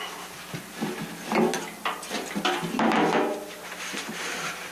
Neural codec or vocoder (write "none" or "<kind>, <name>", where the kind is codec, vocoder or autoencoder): none